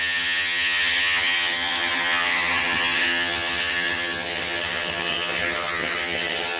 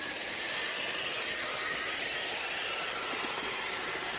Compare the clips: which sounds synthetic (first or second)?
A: first